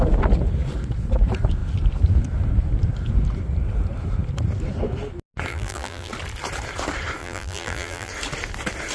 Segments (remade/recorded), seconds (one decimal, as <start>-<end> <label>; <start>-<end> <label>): 0.0-5.5 recorded; 5.5-6.1 remade; 6.1-7.2 recorded; 7.2-8.1 remade; 8.1-8.9 recorded